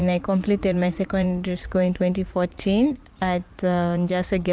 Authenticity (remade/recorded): remade